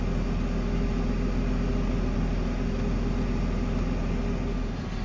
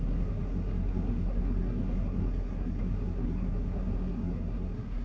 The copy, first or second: second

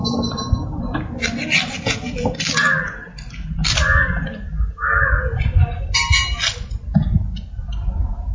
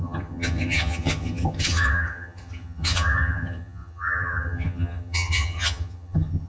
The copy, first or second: second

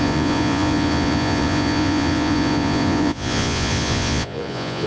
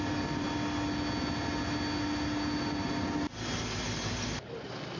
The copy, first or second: first